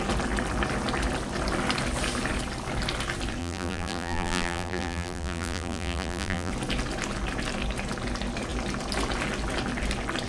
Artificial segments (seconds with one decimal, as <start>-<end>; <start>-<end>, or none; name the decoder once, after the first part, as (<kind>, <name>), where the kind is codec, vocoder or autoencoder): 3.4-6.5 (vocoder, BigVGAN v2)